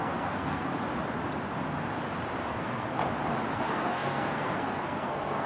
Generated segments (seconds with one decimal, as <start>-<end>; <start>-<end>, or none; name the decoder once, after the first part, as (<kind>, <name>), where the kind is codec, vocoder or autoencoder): 0.0-0.7 (codec, SNAC); 2.5-3.0; 3.5-5.5